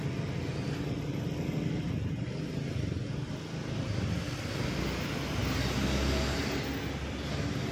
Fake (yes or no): no